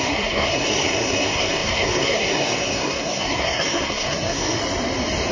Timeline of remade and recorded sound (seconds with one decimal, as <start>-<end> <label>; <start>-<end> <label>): 0.0-4.6 remade; 4.6-5.3 recorded